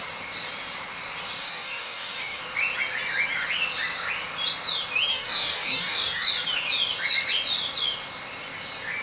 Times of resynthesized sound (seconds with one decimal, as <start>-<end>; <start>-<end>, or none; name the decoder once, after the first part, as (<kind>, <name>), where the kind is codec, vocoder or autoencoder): 1.4-2.4 (codec, DAC); 5.1-6.3